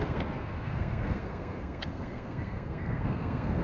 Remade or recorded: remade